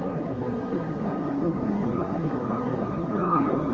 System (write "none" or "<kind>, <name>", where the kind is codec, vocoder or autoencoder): codec, SNAC